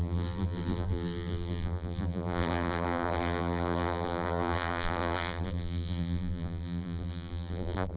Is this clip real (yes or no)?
no